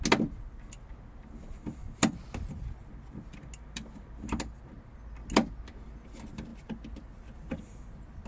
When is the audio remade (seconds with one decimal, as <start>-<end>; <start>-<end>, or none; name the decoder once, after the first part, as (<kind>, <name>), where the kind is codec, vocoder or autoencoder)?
none